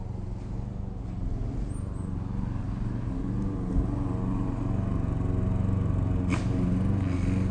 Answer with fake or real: real